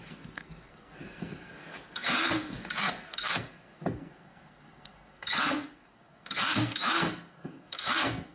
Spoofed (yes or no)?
yes